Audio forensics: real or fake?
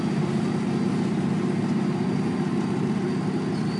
real